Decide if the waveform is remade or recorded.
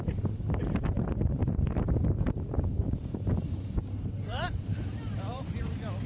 remade